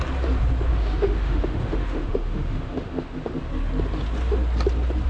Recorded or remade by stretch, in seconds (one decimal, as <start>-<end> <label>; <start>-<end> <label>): 0.0-0.7 recorded; 0.7-3.4 remade; 3.4-5.1 recorded